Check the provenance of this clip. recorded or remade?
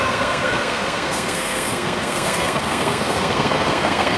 remade